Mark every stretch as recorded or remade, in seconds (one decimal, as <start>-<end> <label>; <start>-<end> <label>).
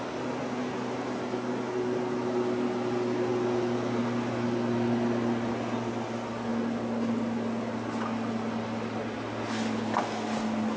0.0-10.8 recorded